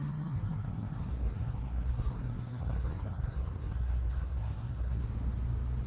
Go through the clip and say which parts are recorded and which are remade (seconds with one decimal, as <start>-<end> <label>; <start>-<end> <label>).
0.0-5.0 remade; 5.0-5.9 recorded